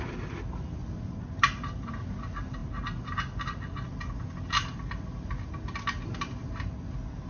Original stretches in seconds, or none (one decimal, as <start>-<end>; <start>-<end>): 0.0-7.3